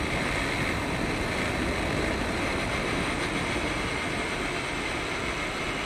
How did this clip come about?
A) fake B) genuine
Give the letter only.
B